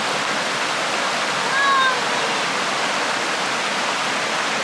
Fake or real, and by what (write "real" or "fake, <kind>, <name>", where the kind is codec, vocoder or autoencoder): real